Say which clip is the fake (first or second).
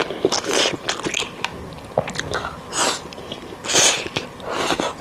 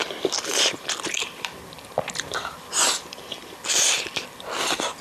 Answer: second